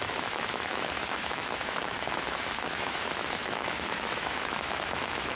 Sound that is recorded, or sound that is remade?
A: remade